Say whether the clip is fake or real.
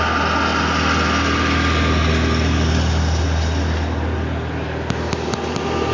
real